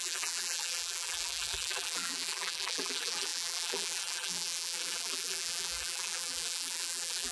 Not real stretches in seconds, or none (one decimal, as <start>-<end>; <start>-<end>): 0.0-7.3